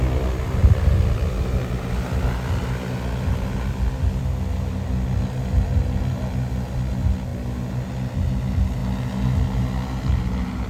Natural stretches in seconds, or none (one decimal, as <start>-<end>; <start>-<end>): 0.0-10.7